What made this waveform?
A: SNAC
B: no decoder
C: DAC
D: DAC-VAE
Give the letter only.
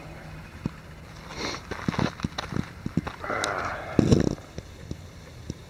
B